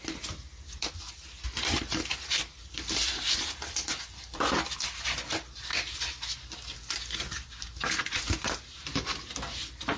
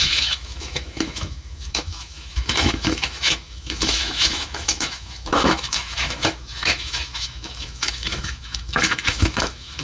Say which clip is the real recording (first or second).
first